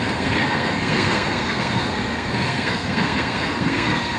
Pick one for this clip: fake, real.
fake